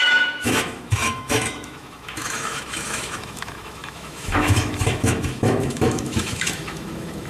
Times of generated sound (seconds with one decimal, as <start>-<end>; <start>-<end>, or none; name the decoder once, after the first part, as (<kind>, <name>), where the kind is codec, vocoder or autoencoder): 0.0-7.3 (autoencoder, DAC-VAE)